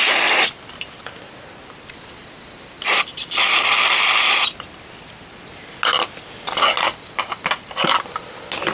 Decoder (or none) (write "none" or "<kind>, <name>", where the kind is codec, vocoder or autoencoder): none